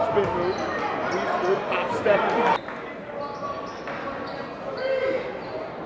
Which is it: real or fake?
real